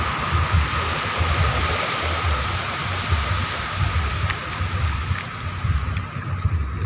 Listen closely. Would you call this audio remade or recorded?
recorded